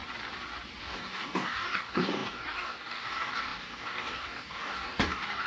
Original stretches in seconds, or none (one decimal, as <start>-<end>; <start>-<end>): 0.0-0.8